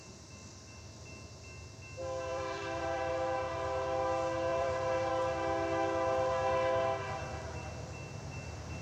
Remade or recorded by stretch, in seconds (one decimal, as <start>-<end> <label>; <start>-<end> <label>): 0.0-0.6 remade; 0.6-2.3 recorded; 2.3-3.1 remade; 3.1-4.5 recorded; 4.5-5.1 remade; 5.1-8.8 recorded